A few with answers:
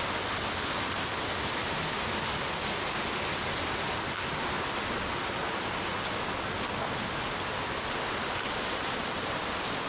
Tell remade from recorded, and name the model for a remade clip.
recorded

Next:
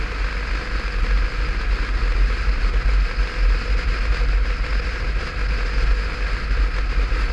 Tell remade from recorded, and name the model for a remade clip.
recorded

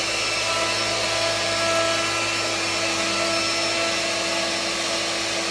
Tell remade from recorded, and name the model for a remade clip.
recorded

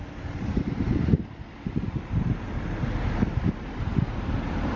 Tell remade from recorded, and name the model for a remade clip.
recorded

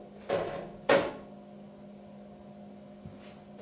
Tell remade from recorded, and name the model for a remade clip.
recorded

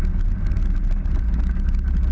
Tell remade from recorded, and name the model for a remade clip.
recorded